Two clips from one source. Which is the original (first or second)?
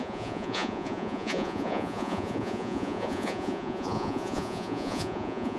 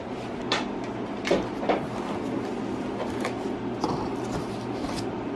second